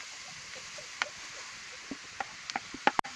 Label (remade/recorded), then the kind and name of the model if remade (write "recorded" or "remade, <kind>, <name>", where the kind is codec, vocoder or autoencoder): recorded